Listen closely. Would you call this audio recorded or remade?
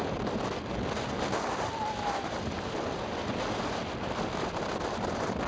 remade